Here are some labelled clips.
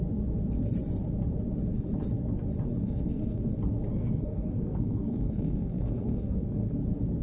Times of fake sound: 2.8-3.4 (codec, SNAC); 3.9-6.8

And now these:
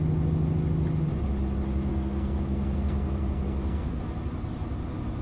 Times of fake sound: 1.9-4.0 (codec, SNAC)

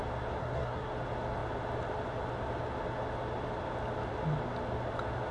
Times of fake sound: 0.4-0.9 (codec, SNAC)

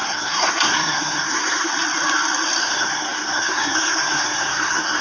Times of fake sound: 0.0-1.7 (codec, SNAC); 2.6-5.0

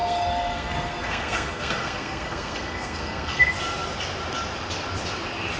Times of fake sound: 0.0-3.4 (codec, SNAC)

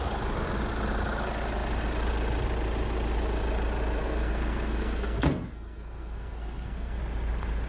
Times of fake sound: 4.0-7.0 (codec, SNAC)

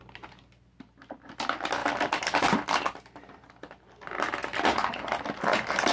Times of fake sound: none